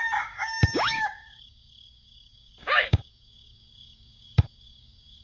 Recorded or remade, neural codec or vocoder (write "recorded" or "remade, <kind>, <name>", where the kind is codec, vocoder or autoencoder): remade, codec, DAC